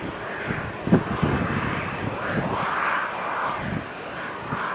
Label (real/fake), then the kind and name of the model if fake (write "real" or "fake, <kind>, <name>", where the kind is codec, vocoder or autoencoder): real